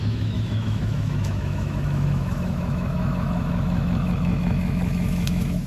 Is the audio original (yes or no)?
no